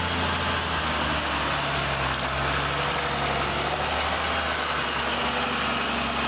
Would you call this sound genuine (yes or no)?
yes